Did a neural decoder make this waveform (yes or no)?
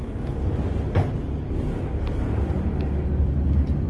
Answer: no